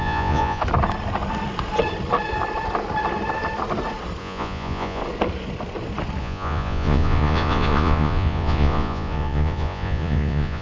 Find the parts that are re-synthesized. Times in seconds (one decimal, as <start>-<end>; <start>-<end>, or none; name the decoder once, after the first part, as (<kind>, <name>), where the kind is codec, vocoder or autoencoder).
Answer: 0.0-0.6 (vocoder, Vocos); 4.2-5.0; 6.2-10.6